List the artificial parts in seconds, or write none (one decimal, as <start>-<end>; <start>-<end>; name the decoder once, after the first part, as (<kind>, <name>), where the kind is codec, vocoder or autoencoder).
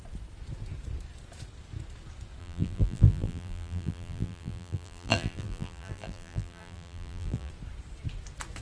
2.4-7.5 (vocoder, BigVGAN v2)